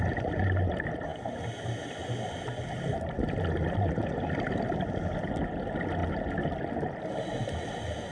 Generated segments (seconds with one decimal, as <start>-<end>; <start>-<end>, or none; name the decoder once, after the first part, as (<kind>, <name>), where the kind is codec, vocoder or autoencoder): none